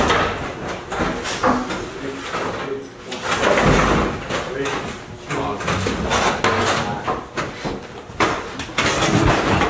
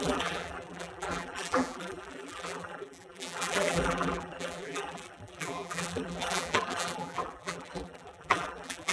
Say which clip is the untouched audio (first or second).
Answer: first